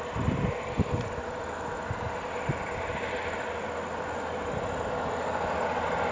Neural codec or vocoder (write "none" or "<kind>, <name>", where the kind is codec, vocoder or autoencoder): none